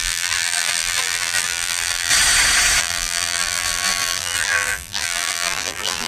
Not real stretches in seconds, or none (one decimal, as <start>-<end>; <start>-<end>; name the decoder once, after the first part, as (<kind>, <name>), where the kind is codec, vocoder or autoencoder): 0.0-2.1 (vocoder, BigVGAN v2); 2.8-6.1